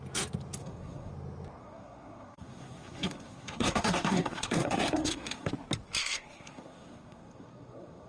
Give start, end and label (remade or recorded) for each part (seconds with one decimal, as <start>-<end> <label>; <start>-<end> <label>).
0.0-0.6 recorded; 0.6-1.1 remade; 1.1-1.6 recorded; 1.6-5.5 remade; 5.5-6.0 recorded; 6.0-8.1 remade